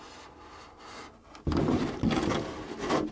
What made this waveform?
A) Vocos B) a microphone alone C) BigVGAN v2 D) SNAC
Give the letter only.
B